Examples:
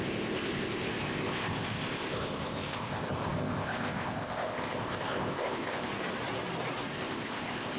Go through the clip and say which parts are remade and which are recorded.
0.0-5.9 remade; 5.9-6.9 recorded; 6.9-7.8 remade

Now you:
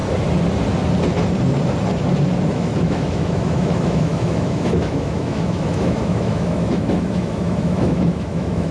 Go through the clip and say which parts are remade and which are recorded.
0.0-2.5 recorded; 2.5-8.7 remade

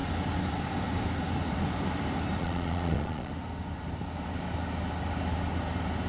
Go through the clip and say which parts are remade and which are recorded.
0.0-2.4 recorded; 2.4-3.3 remade; 3.3-6.1 recorded

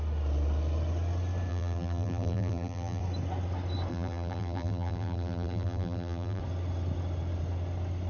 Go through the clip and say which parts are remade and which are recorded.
0.0-1.5 recorded; 1.5-3.0 remade; 3.0-3.9 recorded; 3.9-6.4 remade; 6.4-8.1 recorded

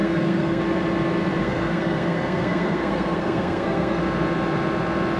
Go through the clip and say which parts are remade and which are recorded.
0.0-0.6 remade; 0.6-1.4 recorded; 1.4-4.0 remade; 4.0-5.2 recorded

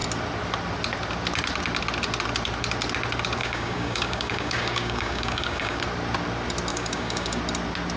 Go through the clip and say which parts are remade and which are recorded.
0.0-3.4 recorded; 3.4-5.8 remade; 5.8-6.7 recorded; 6.7-7.4 remade; 7.4-8.0 recorded